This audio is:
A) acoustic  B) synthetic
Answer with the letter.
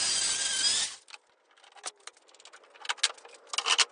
A